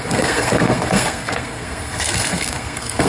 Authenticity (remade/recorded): remade